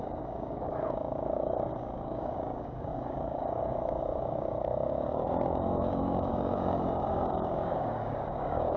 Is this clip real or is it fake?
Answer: fake